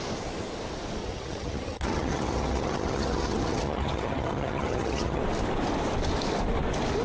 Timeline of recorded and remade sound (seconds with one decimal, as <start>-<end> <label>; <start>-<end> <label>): 0.0-1.0 recorded; 1.0-5.2 remade; 5.2-7.0 recorded